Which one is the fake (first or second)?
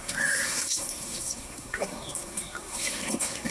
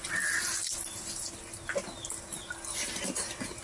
first